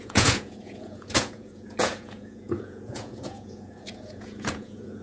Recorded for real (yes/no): no